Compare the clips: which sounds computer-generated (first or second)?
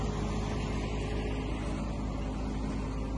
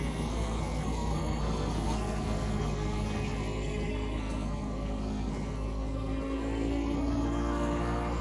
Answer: second